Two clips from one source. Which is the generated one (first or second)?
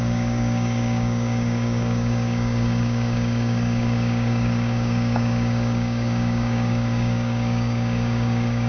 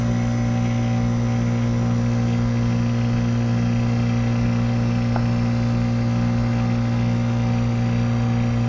first